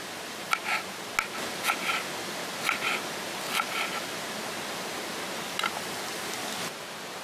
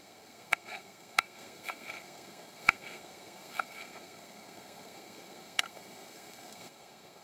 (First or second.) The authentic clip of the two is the first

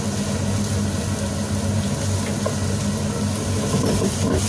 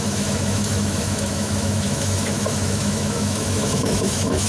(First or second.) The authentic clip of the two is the first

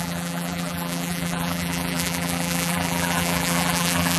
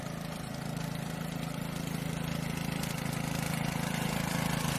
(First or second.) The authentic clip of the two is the second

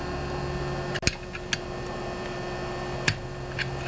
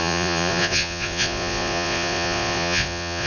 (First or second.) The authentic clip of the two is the first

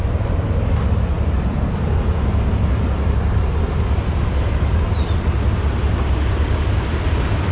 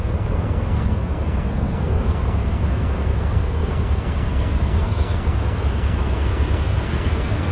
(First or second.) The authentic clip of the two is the first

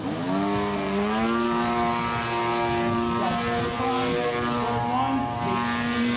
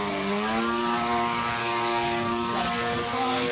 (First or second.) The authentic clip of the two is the first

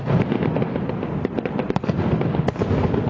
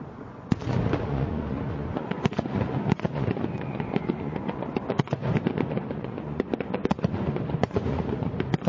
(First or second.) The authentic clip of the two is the first